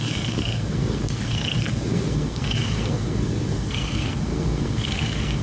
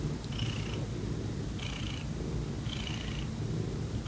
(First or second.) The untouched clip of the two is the second